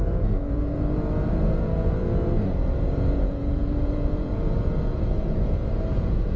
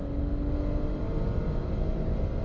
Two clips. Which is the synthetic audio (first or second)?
first